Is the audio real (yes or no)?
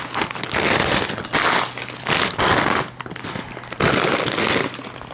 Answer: yes